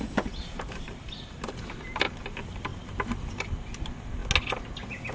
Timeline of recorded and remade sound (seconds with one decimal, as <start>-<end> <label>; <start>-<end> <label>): 0.0-4.2 remade; 4.2-5.1 recorded

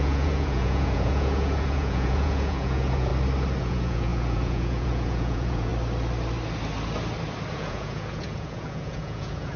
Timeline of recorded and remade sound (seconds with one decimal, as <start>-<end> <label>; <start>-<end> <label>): 0.0-3.1 remade; 3.1-3.6 recorded; 3.6-5.7 remade; 5.7-7.5 recorded; 7.5-9.6 remade

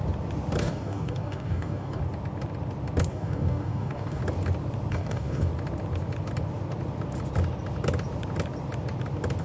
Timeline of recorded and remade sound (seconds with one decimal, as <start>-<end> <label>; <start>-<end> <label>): 0.0-0.6 recorded; 0.6-2.0 remade; 2.0-3.1 recorded; 3.1-4.2 remade; 4.2-4.9 recorded; 4.9-5.5 remade; 5.5-9.4 recorded

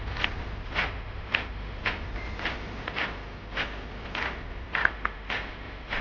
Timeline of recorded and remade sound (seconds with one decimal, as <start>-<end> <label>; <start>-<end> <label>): 0.0-0.6 recorded; 0.6-1.8 remade; 1.8-4.8 recorded; 4.8-6.0 remade